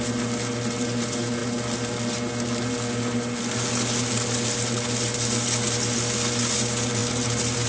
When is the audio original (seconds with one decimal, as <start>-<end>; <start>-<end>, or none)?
0.0-7.7